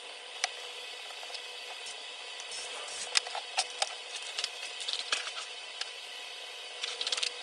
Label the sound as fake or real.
real